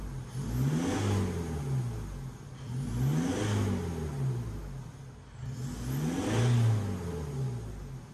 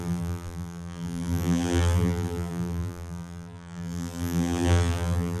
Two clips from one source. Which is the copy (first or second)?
second